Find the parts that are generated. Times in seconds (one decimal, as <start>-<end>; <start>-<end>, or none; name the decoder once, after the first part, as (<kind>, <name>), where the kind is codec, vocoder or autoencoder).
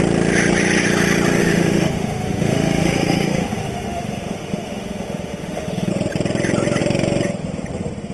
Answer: 1.4-5.9 (autoencoder, DAC-VAE)